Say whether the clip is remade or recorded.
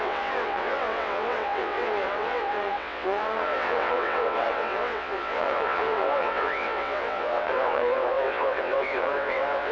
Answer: remade